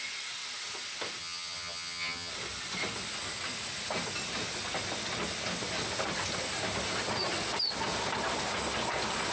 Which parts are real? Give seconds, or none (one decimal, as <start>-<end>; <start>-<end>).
0.0-1.2; 2.3-9.3